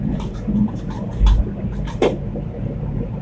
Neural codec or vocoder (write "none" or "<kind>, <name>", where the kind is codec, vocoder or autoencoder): vocoder, BigVGAN v2